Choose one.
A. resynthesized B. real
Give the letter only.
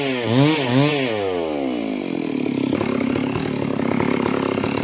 B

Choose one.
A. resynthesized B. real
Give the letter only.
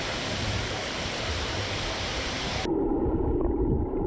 A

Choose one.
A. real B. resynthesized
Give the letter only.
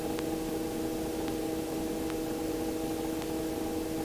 A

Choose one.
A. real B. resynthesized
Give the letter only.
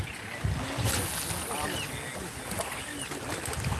A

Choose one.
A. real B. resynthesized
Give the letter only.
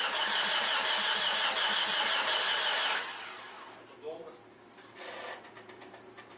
A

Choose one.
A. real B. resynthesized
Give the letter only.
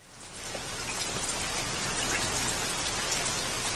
A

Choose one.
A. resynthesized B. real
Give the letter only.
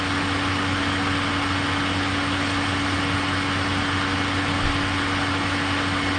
B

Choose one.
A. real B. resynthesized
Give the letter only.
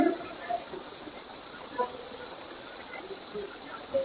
B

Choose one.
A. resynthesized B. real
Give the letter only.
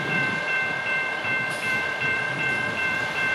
A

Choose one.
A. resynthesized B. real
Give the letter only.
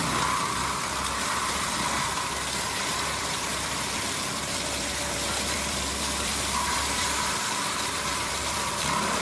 A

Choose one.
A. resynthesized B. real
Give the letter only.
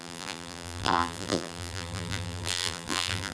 A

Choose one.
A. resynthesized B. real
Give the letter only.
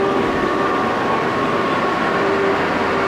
B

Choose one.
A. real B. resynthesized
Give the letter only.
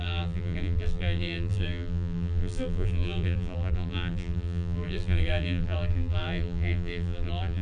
B